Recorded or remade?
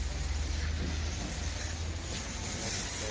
recorded